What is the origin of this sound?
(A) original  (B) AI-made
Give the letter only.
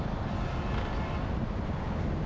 A